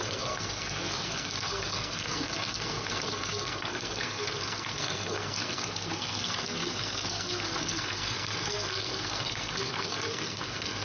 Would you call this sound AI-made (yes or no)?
yes